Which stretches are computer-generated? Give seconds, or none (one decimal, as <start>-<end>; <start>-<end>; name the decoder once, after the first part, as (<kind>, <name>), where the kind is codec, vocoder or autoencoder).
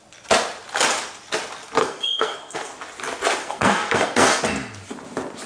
1.8-2.7 (codec, SNAC); 3.4-4.4